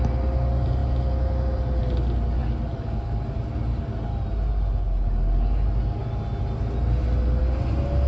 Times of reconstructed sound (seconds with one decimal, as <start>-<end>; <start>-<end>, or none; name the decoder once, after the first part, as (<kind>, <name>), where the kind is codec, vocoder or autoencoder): none